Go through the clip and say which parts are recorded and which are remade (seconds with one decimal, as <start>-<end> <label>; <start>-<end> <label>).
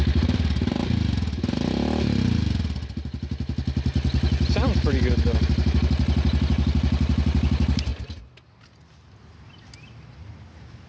0.0-10.9 recorded